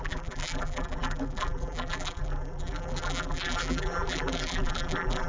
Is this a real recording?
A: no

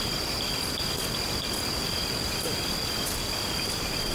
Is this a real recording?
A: yes